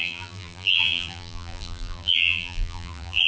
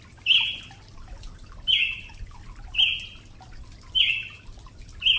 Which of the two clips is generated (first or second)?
first